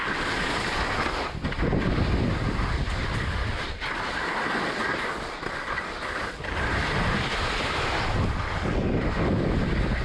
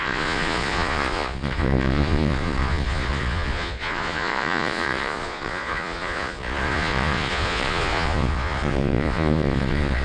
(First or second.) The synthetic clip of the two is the second